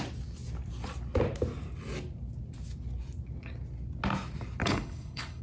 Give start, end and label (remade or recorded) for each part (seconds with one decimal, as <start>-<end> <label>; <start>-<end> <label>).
0.0-4.6 recorded; 4.6-5.4 remade